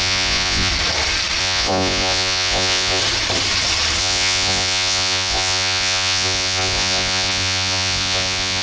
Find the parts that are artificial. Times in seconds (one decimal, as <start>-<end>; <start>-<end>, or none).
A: 0.0-0.7; 1.4-3.0; 4.0-8.6